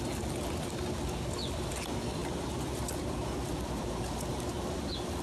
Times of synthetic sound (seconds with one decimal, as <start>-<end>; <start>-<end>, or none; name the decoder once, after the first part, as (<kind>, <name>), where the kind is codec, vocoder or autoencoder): none